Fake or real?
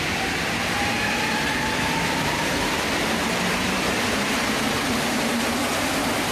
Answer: real